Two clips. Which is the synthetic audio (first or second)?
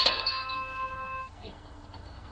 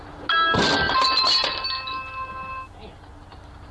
first